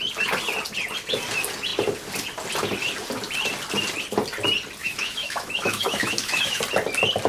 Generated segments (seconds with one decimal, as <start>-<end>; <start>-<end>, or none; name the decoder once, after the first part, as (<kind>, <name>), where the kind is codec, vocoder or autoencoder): 4.8-6.6 (autoencoder, DAC-VAE)